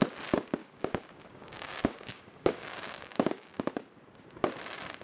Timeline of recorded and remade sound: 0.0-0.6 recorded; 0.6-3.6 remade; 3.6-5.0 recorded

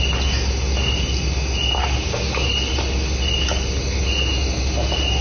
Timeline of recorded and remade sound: 0.0-1.8 recorded; 1.8-2.5 remade; 2.5-5.2 recorded